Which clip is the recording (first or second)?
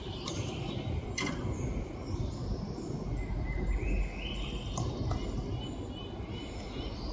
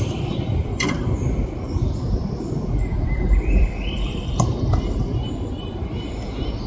first